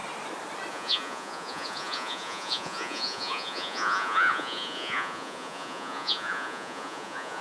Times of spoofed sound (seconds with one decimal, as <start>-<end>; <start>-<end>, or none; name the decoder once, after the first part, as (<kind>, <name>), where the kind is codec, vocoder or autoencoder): 0.7-7.4 (vocoder, Vocos)